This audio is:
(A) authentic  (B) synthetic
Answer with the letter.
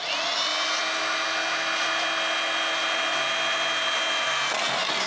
A